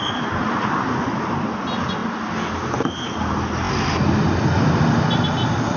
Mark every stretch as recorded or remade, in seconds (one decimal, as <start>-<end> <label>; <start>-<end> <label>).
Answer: 0.0-5.8 recorded